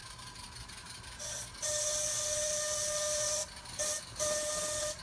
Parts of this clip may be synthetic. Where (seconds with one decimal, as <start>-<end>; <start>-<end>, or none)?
none